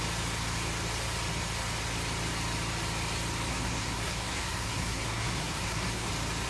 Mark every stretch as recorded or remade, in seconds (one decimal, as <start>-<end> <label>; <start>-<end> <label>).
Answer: 0.0-3.5 recorded; 3.5-6.1 remade; 6.1-6.5 recorded